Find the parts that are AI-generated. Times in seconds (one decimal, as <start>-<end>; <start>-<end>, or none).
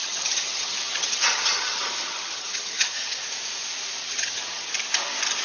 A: 0.0-3.2; 4.0-4.7